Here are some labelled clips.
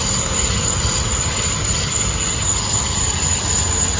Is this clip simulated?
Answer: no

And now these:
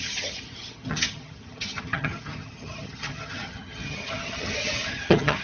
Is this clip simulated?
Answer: yes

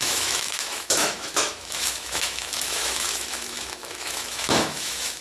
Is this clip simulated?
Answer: yes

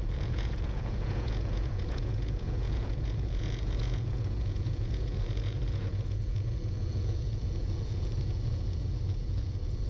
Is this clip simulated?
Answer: yes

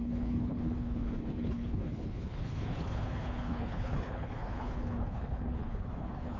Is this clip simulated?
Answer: yes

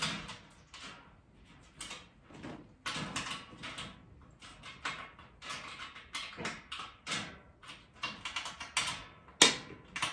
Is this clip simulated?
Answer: no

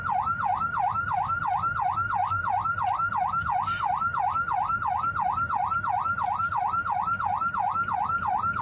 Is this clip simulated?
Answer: no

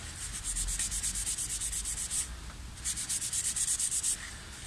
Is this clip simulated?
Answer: no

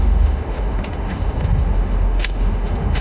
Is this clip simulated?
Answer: yes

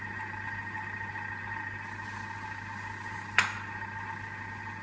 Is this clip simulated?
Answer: no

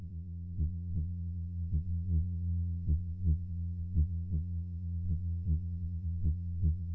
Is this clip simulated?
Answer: yes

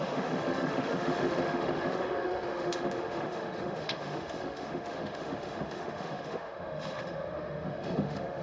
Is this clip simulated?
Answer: yes